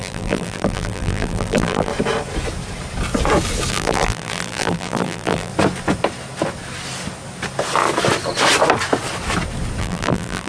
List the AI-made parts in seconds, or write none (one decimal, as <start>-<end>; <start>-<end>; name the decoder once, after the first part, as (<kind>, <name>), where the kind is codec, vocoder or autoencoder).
0.0-1.9 (vocoder, BigVGAN v2); 3.7-5.5; 9.8-10.5